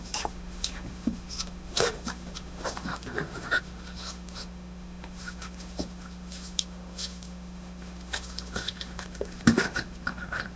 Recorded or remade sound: remade